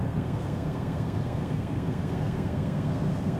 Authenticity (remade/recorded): remade